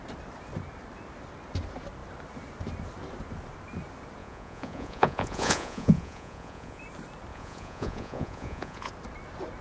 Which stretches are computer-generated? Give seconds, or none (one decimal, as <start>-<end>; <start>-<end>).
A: 4.2-6.8; 7.3-8.9